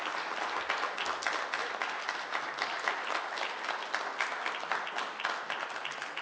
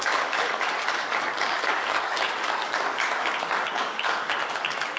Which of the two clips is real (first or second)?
first